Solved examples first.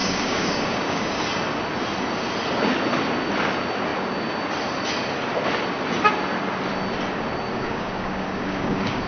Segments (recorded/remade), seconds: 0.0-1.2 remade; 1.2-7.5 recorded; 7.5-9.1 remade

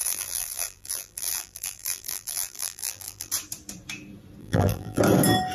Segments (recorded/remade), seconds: 0.0-3.3 remade; 3.3-4.4 recorded; 4.4-5.0 remade; 5.0-5.5 recorded

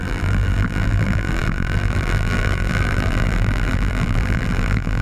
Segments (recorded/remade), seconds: 0.0-5.0 remade